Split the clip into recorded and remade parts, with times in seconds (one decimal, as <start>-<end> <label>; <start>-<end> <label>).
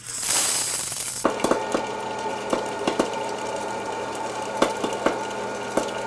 0.0-1.6 remade; 1.6-2.3 recorded; 2.3-4.9 remade; 4.9-6.1 recorded